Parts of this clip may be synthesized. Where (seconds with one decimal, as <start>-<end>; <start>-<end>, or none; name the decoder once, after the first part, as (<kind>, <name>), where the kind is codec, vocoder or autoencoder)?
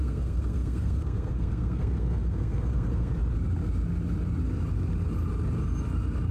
0.0-3.1 (codec, SNAC)